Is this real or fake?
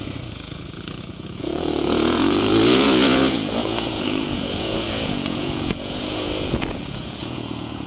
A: fake